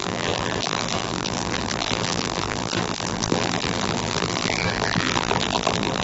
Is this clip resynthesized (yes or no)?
yes